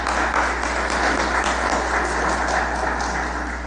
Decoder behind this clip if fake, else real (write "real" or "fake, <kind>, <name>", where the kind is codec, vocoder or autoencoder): real